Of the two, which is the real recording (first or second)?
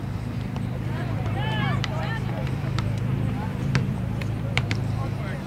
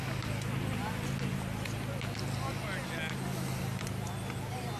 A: second